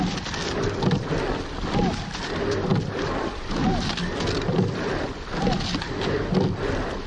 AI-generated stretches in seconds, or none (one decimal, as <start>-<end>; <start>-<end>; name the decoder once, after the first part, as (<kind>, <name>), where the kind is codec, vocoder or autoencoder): none